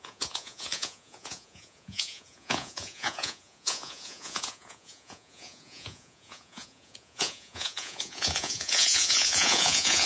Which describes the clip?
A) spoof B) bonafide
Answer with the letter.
A